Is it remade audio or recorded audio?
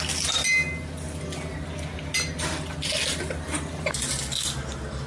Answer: recorded